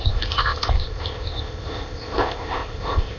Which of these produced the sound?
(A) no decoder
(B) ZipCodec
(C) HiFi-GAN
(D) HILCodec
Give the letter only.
B